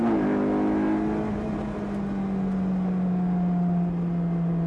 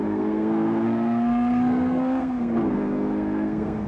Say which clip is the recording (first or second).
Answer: first